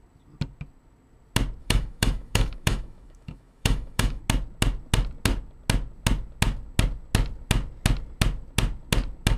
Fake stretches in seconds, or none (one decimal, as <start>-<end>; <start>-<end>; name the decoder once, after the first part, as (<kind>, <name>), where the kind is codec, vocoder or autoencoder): 1.6-4.2 (autoencoder, DAC-VAE)